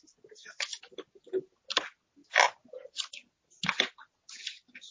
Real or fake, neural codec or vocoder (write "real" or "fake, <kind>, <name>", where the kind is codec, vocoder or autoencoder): real